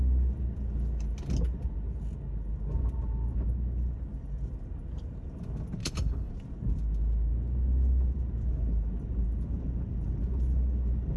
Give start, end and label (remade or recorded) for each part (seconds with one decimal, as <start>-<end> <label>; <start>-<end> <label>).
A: 0.0-5.8 recorded; 5.8-6.3 remade; 6.3-11.2 recorded